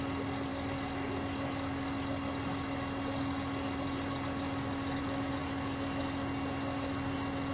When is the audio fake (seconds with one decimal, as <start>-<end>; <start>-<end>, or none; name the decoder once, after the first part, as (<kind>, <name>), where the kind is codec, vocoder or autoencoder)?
none